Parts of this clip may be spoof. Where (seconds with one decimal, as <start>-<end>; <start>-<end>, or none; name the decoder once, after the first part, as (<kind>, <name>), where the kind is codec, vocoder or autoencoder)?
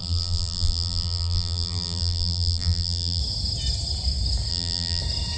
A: 0.0-3.2 (vocoder, BigVGAN v2); 4.5-5.0